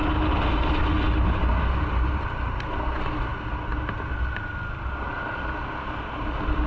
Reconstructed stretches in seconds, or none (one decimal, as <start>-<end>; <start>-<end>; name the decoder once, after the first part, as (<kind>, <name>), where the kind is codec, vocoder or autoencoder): none